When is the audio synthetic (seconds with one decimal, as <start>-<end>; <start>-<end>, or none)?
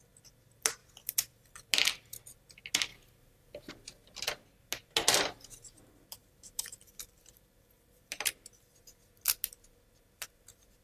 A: 2.9-3.7; 6.2-8.3